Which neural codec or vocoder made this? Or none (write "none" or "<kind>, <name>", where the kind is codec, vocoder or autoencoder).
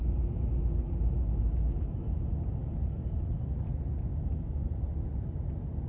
none